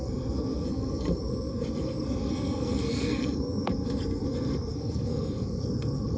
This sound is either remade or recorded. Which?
remade